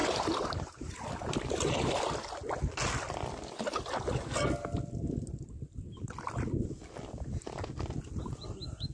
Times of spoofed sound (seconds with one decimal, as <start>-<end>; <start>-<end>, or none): 0.0-0.9